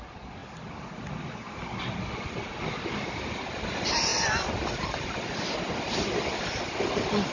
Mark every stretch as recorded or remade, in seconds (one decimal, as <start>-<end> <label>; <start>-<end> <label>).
0.0-7.3 recorded